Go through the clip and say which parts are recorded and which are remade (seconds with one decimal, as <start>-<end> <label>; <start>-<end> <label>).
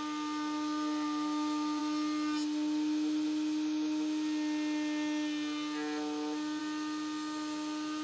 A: 0.0-8.0 recorded